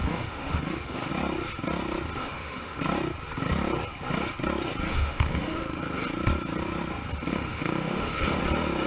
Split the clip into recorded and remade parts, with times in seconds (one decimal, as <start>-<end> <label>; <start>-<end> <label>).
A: 0.0-1.1 remade; 1.1-2.2 recorded; 2.2-2.8 remade; 2.8-4.9 recorded; 4.9-5.8 remade; 5.8-7.3 recorded; 7.3-8.4 remade; 8.4-8.9 recorded